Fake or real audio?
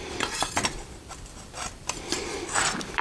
fake